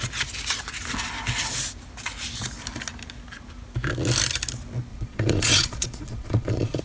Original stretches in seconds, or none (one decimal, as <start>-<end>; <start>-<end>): 0.0-4.9